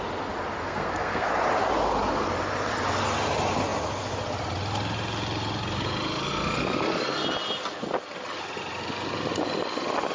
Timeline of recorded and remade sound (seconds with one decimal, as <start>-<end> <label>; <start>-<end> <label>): 0.0-0.6 recorded; 0.6-1.3 remade; 1.3-10.1 recorded

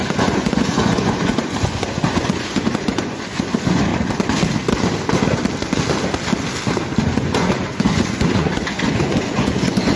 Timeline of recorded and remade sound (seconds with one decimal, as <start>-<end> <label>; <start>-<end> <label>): 0.0-3.9 remade; 3.9-7.0 recorded; 7.0-10.0 remade

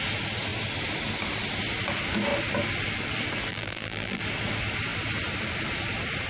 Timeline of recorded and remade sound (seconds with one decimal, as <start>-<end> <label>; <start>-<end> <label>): 0.0-3.5 recorded; 3.5-4.2 remade; 4.2-6.3 recorded

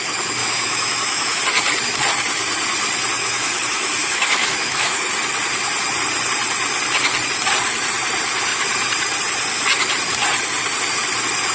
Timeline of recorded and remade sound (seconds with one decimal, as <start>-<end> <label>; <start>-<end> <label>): 0.0-0.4 recorded; 0.4-1.4 remade; 1.4-3.2 recorded; 3.2-5.1 remade; 5.1-11.5 recorded

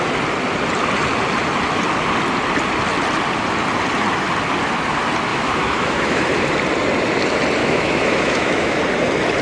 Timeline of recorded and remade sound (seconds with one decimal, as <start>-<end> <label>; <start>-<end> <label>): 0.0-5.3 recorded; 5.3-6.2 remade; 6.2-7.6 recorded; 7.6-8.8 remade; 8.8-9.4 recorded

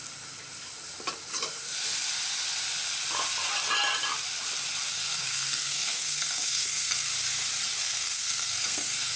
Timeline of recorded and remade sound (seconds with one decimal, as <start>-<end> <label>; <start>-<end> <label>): 0.0-4.9 recorded; 4.9-7.1 remade; 7.1-7.8 recorded; 7.8-9.2 remade